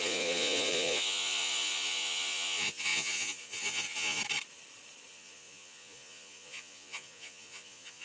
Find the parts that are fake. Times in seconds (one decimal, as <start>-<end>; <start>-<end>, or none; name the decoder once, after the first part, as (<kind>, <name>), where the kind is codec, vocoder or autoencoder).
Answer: 0.0-4.2 (vocoder, Vocos); 5.1-8.0